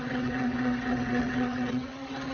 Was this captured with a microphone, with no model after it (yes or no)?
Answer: no